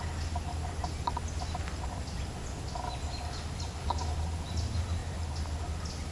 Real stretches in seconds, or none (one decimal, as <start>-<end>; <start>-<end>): 0.0-6.1